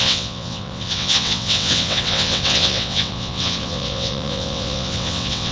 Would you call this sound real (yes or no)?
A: no